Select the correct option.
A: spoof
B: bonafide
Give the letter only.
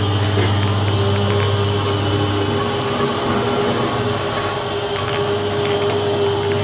B